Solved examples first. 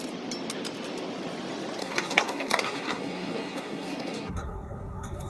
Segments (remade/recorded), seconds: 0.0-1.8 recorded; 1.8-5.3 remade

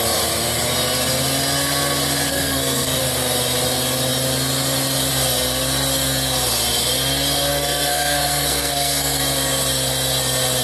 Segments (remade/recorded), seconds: 0.0-2.3 recorded; 2.3-3.0 remade; 3.0-7.5 recorded; 7.5-9.2 remade; 9.2-10.6 recorded

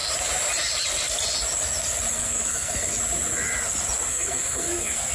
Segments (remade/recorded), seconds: 0.0-2.1 recorded; 2.1-2.9 remade; 2.9-4.1 recorded; 4.1-5.1 remade

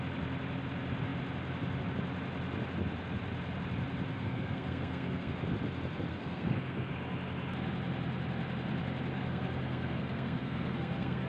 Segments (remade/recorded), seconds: 0.0-4.1 recorded; 4.1-5.3 remade; 5.3-6.1 recorded; 6.1-6.9 remade; 6.9-9.1 recorded; 9.1-11.3 remade